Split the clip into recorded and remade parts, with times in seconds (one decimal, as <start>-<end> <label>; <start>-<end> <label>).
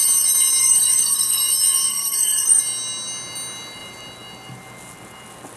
0.0-0.6 recorded; 0.6-1.4 remade; 1.4-1.9 recorded; 1.9-2.6 remade; 2.6-5.6 recorded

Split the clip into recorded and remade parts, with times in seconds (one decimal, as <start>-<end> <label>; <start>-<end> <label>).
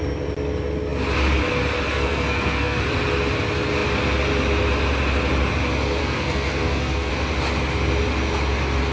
0.0-1.9 recorded; 1.9-2.8 remade; 2.8-6.0 recorded; 6.0-7.1 remade; 7.1-8.9 recorded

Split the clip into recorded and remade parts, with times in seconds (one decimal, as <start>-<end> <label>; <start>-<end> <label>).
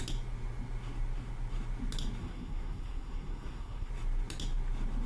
0.0-2.2 recorded; 2.2-3.9 remade; 3.9-5.1 recorded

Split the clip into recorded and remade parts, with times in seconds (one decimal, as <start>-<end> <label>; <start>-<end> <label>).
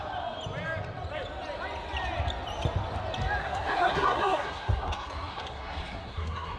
0.0-3.4 recorded; 3.4-6.6 remade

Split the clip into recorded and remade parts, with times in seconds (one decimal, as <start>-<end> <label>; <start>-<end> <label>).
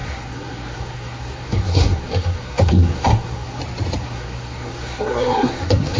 0.0-3.6 remade; 3.6-4.0 recorded; 4.0-6.0 remade